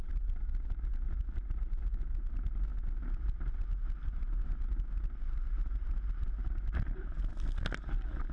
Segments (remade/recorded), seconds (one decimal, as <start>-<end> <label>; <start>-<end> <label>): 0.0-8.3 recorded